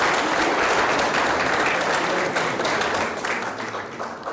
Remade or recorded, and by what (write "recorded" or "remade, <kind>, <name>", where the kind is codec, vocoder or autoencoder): recorded